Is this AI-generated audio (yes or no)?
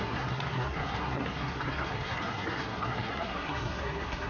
yes